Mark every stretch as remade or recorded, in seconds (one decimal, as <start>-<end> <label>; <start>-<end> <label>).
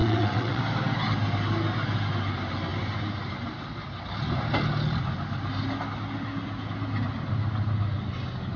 0.0-0.6 remade; 0.6-8.6 recorded